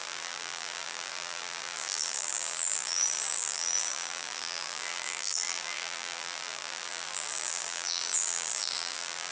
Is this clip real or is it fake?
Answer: fake